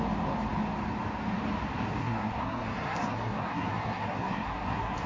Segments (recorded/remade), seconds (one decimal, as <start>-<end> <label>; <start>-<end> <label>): 0.0-2.0 recorded; 2.0-5.1 remade